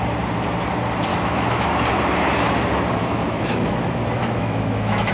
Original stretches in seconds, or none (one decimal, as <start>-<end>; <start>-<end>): 0.0-1.1; 1.8-3.0; 3.8-4.2